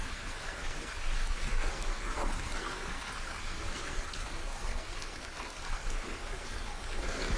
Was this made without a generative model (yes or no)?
no